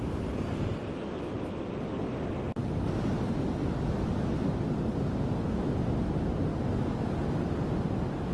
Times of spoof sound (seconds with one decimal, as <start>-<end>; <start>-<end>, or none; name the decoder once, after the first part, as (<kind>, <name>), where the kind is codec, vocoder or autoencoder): none